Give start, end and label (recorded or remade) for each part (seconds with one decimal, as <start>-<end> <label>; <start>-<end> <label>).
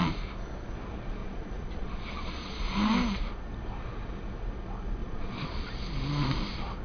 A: 0.0-1.2 recorded; 1.2-2.6 remade; 2.6-5.0 recorded; 5.0-5.7 remade; 5.7-6.8 recorded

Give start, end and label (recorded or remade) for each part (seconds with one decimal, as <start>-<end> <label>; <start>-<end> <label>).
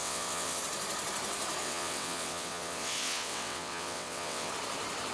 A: 0.0-0.6 remade; 0.6-1.6 recorded; 1.6-4.5 remade; 4.5-5.1 recorded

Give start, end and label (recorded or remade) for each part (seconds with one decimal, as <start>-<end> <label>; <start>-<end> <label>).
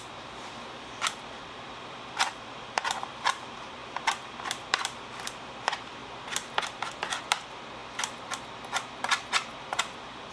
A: 0.0-6.0 remade; 6.0-6.6 recorded; 6.6-7.8 remade; 7.8-10.3 recorded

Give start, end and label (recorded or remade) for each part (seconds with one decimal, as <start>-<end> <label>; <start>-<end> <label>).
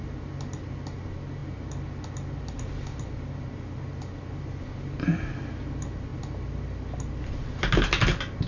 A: 0.0-8.5 recorded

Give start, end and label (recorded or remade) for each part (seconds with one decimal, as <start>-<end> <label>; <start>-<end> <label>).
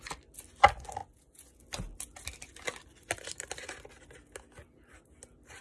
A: 0.0-1.0 recorded; 1.0-1.6 remade; 1.6-5.6 recorded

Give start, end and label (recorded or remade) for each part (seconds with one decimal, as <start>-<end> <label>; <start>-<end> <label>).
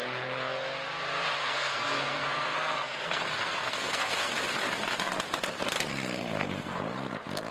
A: 0.0-1.4 recorded; 1.4-4.3 remade; 4.3-6.2 recorded; 6.2-6.8 remade; 6.8-7.5 recorded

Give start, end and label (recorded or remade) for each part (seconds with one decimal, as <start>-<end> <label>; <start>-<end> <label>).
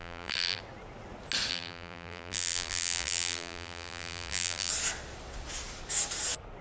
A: 0.0-0.6 remade; 0.6-1.5 recorded; 1.5-4.7 remade; 4.7-6.6 recorded